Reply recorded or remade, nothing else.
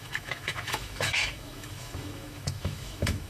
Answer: remade